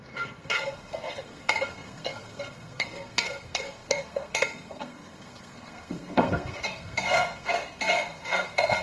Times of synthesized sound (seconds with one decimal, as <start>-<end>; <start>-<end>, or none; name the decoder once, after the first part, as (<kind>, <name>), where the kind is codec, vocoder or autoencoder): 0.0-8.8 (codec, SNAC)